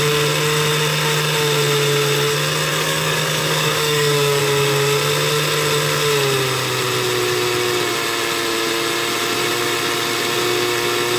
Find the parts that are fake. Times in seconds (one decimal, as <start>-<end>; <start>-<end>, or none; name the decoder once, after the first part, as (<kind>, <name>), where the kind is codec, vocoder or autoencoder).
2.7-4.4 (codec, DAC)